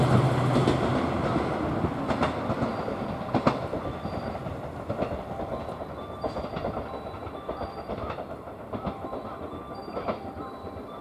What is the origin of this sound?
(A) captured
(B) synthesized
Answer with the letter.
A